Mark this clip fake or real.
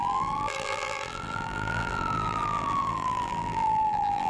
fake